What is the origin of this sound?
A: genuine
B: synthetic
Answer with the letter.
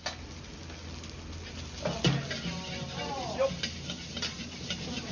A